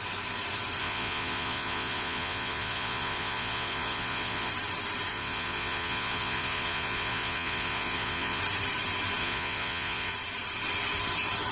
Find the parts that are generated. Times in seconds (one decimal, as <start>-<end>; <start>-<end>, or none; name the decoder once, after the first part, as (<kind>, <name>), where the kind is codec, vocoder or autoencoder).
0.8-4.5 (vocoder, Vocos); 5.1-8.4; 9.2-10.1